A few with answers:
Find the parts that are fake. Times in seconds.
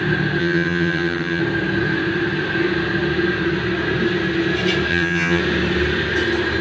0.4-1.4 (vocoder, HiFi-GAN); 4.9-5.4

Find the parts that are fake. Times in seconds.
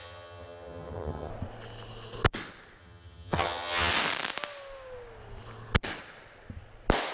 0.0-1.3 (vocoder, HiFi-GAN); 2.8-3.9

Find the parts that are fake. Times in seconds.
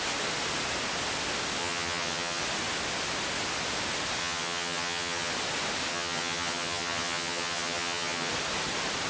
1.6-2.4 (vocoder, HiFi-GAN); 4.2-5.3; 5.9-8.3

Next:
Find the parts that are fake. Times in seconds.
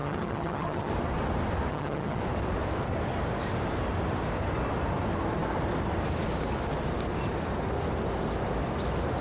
0.0-0.9 (vocoder, HiFi-GAN); 1.7-2.2